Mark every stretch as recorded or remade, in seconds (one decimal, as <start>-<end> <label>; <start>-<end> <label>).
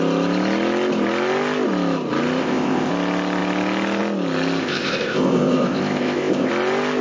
0.0-2.4 recorded; 2.4-2.9 remade; 2.9-4.6 recorded; 4.6-6.5 remade; 6.5-7.0 recorded